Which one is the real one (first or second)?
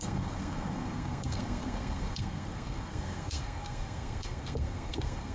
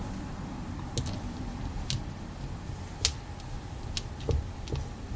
second